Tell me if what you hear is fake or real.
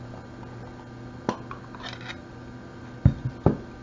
real